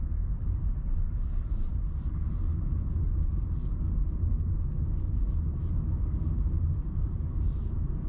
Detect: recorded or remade remade